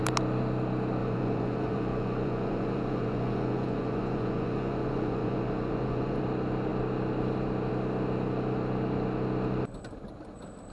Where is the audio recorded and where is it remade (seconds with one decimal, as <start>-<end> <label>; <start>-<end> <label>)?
0.0-1.0 recorded; 1.0-6.2 remade; 6.2-10.7 recorded